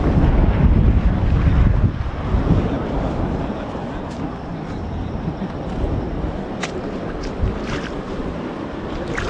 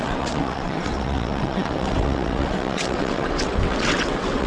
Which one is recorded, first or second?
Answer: first